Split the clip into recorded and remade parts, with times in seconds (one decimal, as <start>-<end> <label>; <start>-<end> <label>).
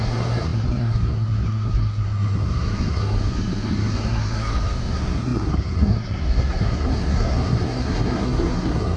0.0-9.0 remade